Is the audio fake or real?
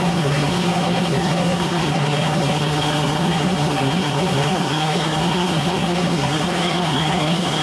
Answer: fake